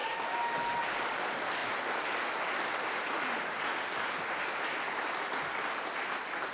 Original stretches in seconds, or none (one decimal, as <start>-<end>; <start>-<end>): 0.0-6.5